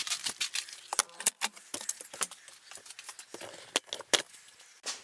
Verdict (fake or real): real